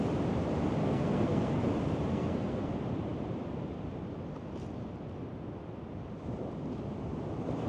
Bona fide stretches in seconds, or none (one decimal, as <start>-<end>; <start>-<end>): 0.0-0.8; 1.6-2.1; 2.7-7.7